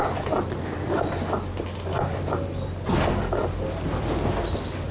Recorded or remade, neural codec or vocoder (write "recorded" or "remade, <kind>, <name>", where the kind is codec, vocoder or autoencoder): recorded